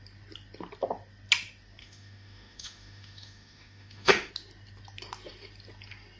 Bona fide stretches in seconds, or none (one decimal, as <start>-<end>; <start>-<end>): 0.0-1.8; 4.3-6.2